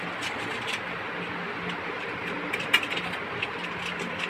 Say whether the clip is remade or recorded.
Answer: recorded